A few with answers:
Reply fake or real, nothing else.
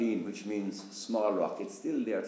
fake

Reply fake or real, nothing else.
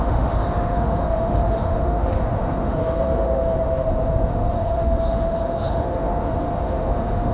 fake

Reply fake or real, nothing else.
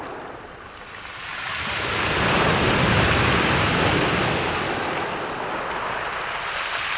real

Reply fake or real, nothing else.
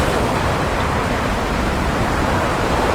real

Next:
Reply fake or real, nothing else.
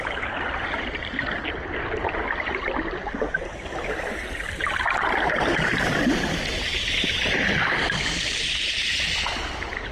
real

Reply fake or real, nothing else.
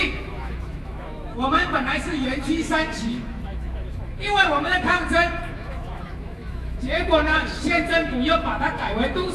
fake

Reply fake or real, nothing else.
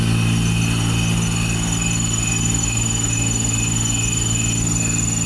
real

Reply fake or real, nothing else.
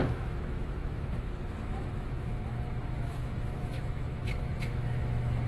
fake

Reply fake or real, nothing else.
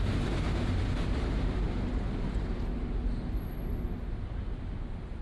real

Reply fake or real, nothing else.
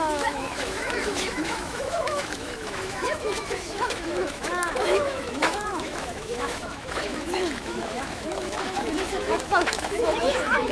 fake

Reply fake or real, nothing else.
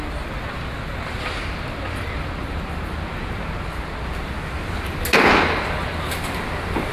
real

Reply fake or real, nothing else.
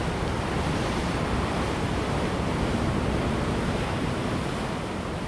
real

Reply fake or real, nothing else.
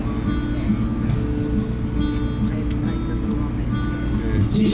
real